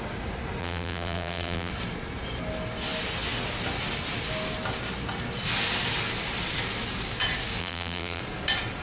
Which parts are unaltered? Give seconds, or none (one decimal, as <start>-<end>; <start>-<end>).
0.0-0.6; 1.7-7.6; 8.2-8.8